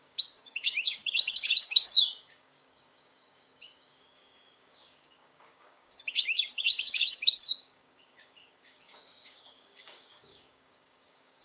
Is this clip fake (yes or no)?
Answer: yes